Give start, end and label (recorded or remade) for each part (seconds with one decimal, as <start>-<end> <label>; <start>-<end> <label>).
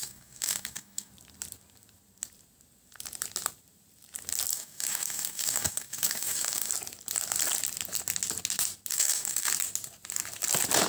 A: 0.0-1.1 remade; 1.1-4.5 recorded; 4.5-6.7 remade; 6.7-8.9 recorded; 8.9-9.5 remade; 9.5-10.9 recorded